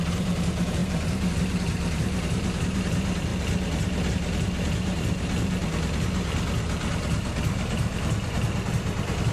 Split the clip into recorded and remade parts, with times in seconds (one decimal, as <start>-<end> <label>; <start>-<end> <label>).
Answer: 0.0-3.3 remade; 3.3-4.1 recorded; 4.1-5.6 remade; 5.6-6.9 recorded; 6.9-9.3 remade